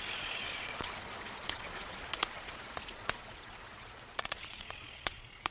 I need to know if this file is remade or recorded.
remade